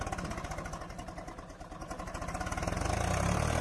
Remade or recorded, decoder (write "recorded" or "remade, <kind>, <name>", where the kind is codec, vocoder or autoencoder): recorded